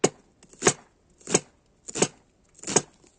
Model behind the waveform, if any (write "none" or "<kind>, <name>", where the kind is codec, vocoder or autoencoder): none